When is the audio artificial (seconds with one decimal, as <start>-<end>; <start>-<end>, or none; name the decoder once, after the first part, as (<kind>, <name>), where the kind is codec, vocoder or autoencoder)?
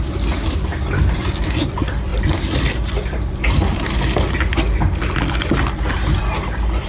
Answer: none